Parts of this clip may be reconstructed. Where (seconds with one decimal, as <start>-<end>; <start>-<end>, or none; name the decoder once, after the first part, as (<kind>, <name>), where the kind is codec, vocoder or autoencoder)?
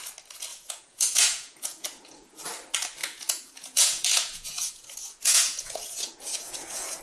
0.5-2.4 (vocoder, Vocos); 3.0-7.0